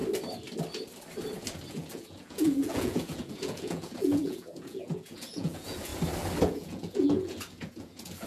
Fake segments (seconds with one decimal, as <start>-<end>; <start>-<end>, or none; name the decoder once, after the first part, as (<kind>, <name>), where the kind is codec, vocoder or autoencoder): 1.7-5.9 (vocoder, Vocos); 6.4-8.3